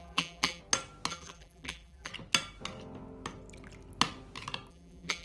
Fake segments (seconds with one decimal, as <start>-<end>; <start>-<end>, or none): 0.0-0.6; 1.1-2.1; 4.7-5.2